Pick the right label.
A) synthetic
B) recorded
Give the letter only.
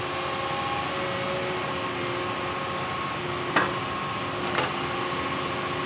B